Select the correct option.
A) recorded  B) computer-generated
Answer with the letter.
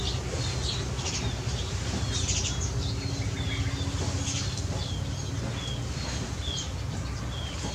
A